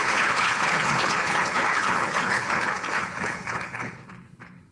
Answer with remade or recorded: remade